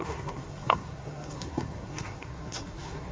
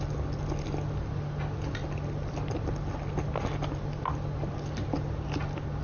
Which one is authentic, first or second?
second